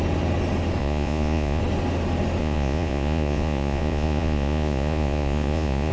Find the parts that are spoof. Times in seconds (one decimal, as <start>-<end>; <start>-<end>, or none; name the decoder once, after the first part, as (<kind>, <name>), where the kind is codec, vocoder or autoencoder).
0.8-1.6 (vocoder, Vocos); 2.4-5.9